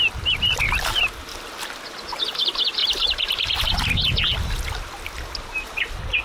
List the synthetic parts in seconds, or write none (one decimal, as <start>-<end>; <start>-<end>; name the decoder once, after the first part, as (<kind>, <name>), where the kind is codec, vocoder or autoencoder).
2.8-3.6 (vocoder, BigVGAN v2)